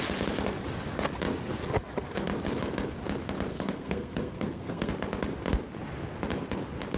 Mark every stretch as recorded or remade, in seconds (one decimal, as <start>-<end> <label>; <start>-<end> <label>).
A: 0.0-3.5 recorded; 3.5-4.9 remade; 4.9-7.0 recorded